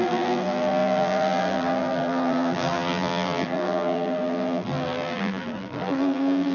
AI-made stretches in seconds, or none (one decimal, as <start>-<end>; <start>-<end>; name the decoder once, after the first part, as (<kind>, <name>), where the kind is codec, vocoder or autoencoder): 0.0-6.5 (vocoder, BigVGAN v2)